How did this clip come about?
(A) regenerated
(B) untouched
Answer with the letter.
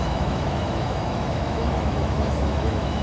A